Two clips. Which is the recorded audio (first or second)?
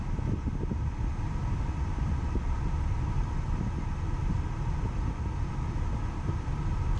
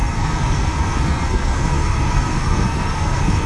first